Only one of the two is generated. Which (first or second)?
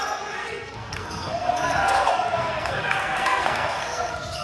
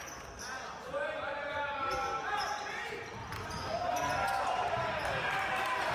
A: first